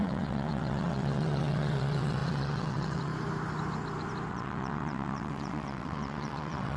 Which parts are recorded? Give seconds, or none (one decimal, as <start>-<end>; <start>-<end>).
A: 3.1-4.3